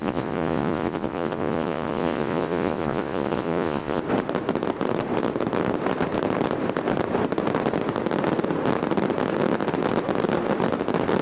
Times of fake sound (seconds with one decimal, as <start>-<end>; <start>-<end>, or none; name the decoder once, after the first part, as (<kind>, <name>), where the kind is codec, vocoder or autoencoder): 0.0-4.0 (vocoder, Vocos)